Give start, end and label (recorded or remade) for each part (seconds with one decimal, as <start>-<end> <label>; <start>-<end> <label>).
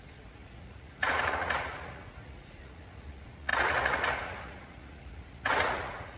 0.0-6.2 remade